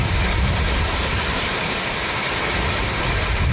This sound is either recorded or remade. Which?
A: remade